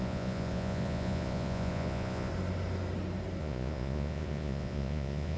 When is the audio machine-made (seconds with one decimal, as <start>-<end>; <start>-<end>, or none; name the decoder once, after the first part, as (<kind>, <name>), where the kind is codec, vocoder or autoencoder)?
0.0-2.3 (vocoder, Vocos); 3.4-5.4